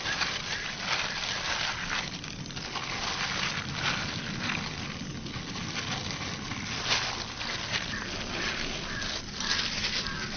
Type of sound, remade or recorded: recorded